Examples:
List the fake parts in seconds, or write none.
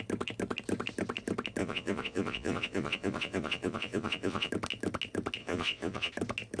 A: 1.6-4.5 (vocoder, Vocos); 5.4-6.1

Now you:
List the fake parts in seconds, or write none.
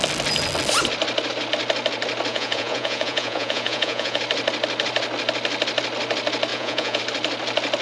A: 2.3-4.2 (vocoder, Vocos); 6.5-7.0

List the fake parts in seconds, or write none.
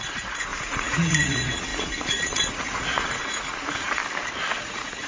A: 0.0-4.0 (vocoder, Vocos); 4.6-5.1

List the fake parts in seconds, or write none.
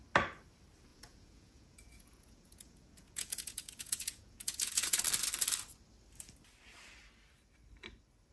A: 0.9-5.0 (vocoder, Vocos)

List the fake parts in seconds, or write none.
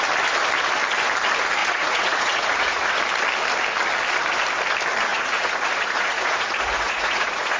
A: 1.6-3.0 (vocoder, Vocos); 5.1-7.6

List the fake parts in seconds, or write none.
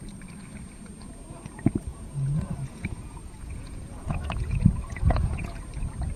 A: 1.9-5.6 (vocoder, Vocos)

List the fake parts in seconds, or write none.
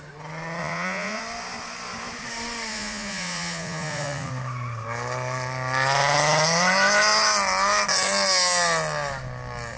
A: 0.6-1.2 (vocoder, Vocos); 2.7-4.3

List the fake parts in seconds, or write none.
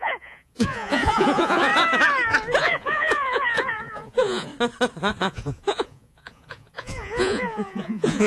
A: 0.0-1.7 (vocoder, Vocos); 2.6-4.5; 5.1-8.3